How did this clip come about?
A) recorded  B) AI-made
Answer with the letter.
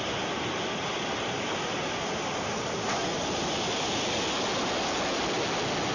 A